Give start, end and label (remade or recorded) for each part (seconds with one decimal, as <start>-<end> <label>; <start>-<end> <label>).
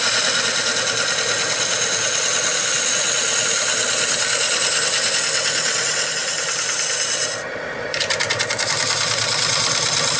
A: 0.0-10.2 recorded